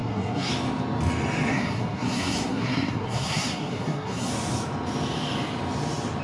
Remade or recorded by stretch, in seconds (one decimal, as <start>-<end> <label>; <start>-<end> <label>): 0.0-0.5 remade; 0.5-1.5 recorded; 1.5-4.3 remade; 4.3-6.2 recorded

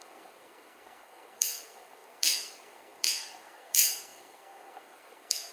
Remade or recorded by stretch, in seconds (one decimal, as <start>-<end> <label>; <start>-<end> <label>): 0.0-5.5 remade

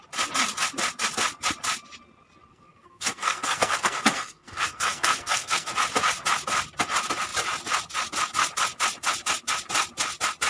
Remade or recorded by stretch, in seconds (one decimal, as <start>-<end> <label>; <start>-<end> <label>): 0.0-2.5 recorded; 2.5-5.7 remade; 5.7-10.5 recorded

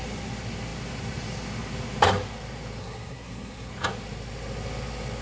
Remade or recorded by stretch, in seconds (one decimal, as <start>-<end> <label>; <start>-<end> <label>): 0.0-2.8 recorded; 2.8-3.7 remade; 3.7-5.2 recorded